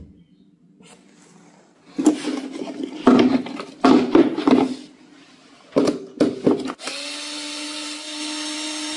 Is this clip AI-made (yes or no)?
no